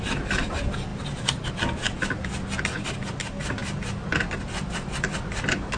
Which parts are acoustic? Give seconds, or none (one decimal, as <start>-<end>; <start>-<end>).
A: 0.0-5.8